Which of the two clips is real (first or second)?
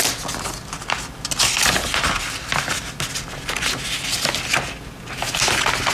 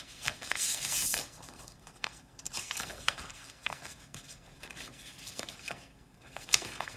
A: first